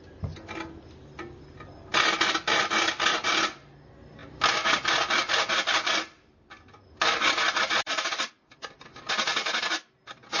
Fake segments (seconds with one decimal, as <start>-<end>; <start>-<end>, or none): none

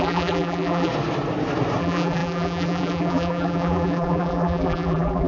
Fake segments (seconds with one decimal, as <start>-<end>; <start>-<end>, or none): 0.0-0.9; 1.8-5.3

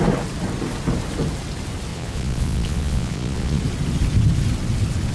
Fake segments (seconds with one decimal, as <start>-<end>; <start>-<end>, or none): 1.9-3.6

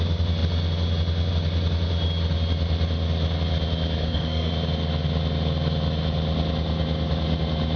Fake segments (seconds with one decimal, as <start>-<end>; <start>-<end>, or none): 4.0-4.5

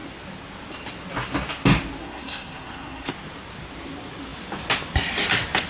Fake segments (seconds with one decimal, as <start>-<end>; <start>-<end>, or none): 2.0-3.1